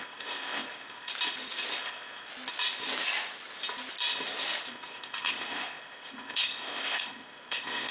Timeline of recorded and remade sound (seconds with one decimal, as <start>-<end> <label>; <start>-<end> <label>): 0.0-1.1 remade; 1.1-1.8 recorded; 1.8-2.3 remade; 2.3-4.7 recorded; 4.7-7.9 remade